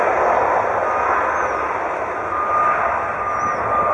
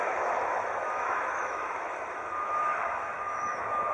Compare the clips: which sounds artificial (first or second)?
second